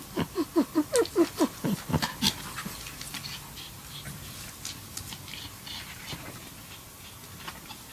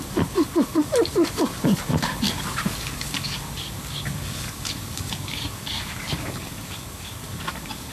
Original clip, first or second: first